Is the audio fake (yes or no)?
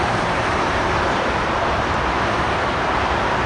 yes